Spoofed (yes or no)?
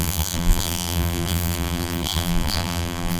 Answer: yes